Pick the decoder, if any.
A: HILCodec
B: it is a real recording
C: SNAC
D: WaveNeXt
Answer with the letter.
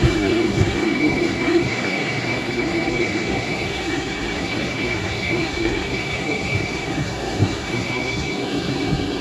C